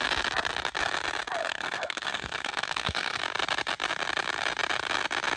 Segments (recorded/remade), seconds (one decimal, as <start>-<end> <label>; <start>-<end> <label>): 0.0-1.4 recorded; 1.4-3.2 remade; 3.2-5.4 recorded